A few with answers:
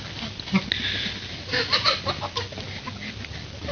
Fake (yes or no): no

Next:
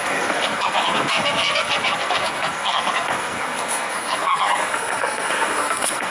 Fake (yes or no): yes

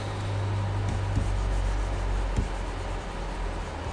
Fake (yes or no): no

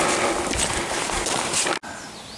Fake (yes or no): no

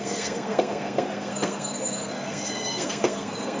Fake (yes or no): yes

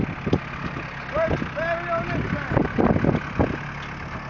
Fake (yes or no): no